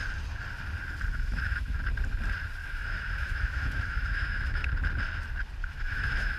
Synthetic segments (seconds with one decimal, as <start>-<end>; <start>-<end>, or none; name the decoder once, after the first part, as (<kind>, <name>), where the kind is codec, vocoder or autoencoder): 1.1-1.8 (autoencoder, DAC-VAE); 2.6-4.7; 5.6-6.4